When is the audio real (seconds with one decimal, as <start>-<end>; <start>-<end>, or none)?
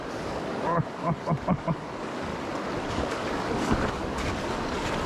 2.3-2.9